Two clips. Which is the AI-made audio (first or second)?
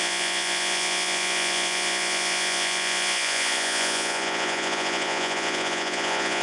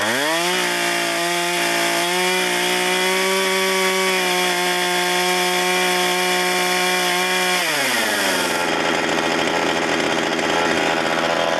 first